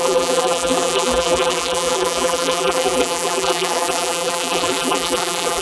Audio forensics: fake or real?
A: fake